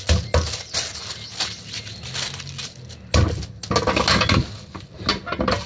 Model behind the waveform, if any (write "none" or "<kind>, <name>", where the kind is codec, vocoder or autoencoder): none